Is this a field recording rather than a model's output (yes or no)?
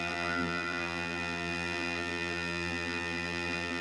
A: no